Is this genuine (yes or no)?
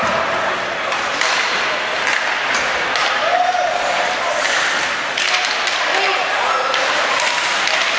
yes